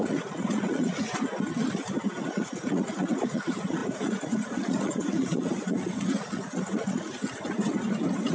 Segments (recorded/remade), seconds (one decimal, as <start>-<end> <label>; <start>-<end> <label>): 0.0-1.1 remade; 1.1-2.2 recorded; 2.2-7.2 remade; 7.2-8.3 recorded

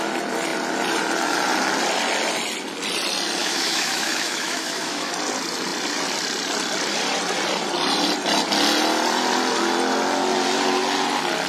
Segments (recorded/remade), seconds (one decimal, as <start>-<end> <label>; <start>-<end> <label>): 0.0-3.4 recorded; 3.4-5.1 remade; 5.1-11.5 recorded

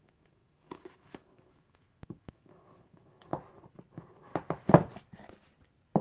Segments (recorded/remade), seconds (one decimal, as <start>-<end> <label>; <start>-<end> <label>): 0.0-3.3 remade; 3.3-3.9 recorded; 3.9-4.3 remade; 4.3-6.0 recorded

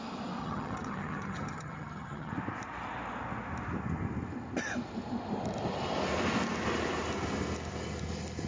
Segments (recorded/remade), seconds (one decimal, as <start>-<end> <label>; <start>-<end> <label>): 0.0-0.4 recorded; 0.4-2.3 remade; 2.3-8.5 recorded

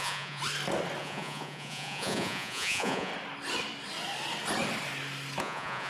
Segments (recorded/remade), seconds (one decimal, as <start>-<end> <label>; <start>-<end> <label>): 0.0-0.4 remade; 0.4-1.0 recorded; 1.0-3.1 remade; 3.1-5.4 recorded; 5.4-5.9 remade

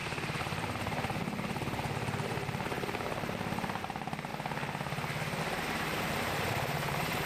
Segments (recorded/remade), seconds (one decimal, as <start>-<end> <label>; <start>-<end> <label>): 0.0-4.3 remade; 4.3-5.4 recorded; 5.4-7.3 remade